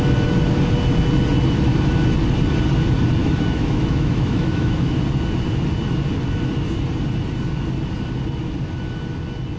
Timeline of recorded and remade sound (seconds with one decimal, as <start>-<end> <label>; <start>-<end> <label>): 0.0-3.2 recorded; 3.2-5.0 remade; 5.0-9.6 recorded